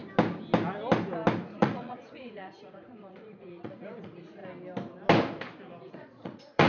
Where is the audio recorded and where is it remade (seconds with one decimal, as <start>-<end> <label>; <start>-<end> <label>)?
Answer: 0.0-1.5 recorded; 1.5-4.4 remade; 4.4-5.9 recorded; 5.9-6.7 remade